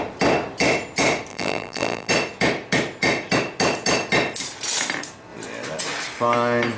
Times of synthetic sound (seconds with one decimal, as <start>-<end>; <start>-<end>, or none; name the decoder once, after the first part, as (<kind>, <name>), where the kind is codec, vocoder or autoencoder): 1.3-2.1 (vocoder, BigVGAN v2)